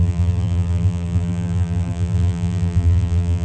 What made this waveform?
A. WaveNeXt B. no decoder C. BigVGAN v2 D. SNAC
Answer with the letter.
C